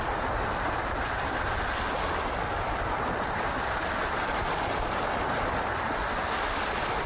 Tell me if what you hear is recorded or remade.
recorded